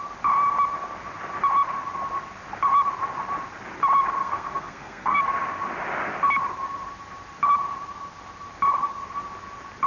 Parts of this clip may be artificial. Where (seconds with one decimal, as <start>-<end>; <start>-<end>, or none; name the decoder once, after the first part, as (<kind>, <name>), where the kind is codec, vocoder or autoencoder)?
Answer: 4.2-5.3 (codec, SNAC)